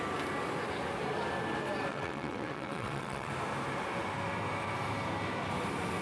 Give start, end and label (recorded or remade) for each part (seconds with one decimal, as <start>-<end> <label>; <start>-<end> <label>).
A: 0.0-1.9 recorded; 1.9-3.3 remade; 3.3-6.0 recorded